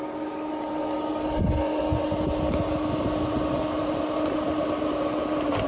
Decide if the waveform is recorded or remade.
recorded